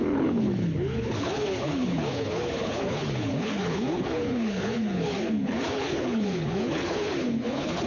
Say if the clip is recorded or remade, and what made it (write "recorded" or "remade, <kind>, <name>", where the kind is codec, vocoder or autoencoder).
remade, codec, HILCodec